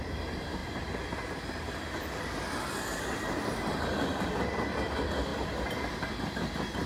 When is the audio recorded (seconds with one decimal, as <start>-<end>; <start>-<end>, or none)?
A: 0.0-5.3; 6.2-6.9